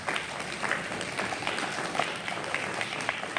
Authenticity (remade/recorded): recorded